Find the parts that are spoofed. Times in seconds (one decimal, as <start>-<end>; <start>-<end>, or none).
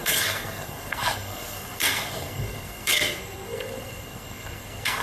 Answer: 0.0-5.0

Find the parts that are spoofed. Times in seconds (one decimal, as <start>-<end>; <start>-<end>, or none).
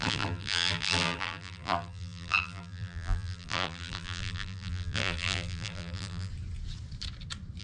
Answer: 0.0-6.3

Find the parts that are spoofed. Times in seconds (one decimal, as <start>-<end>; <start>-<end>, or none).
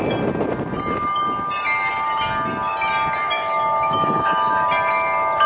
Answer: 3.2-4.6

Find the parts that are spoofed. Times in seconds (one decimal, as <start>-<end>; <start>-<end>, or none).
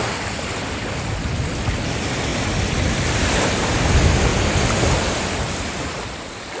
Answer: 2.3-3.4